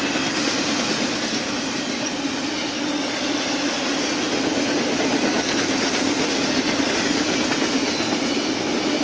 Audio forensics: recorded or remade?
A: recorded